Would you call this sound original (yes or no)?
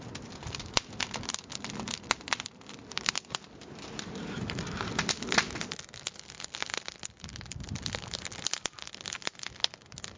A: yes